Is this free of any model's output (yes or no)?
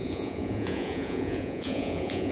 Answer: no